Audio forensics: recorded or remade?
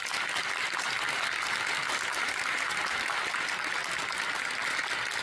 recorded